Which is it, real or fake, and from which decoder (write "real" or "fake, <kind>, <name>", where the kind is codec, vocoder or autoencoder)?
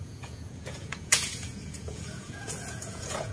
fake, vocoder, Vocos